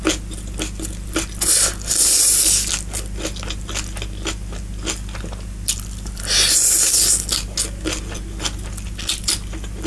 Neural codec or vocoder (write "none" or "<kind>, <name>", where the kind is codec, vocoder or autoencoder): none